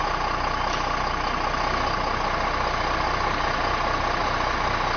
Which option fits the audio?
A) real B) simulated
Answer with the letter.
A